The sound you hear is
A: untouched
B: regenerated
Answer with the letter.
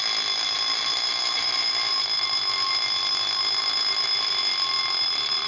A